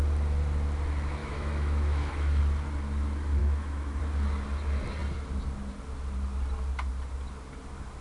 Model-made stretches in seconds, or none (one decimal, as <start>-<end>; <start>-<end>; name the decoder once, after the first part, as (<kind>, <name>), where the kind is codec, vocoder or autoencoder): 1.2-2.4 (autoencoder, DAC-VAE); 3.4-4.0